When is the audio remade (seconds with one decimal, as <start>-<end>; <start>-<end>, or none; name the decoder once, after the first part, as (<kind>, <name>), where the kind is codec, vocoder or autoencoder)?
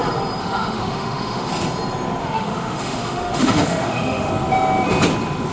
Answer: 0.4-1.5 (autoencoder, DAC-VAE); 2.2-4.3